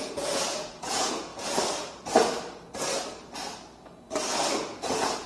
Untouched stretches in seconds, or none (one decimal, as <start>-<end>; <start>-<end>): 1.3-4.5